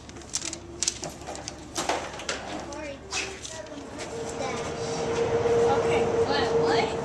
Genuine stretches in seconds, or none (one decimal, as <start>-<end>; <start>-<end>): 2.3-7.0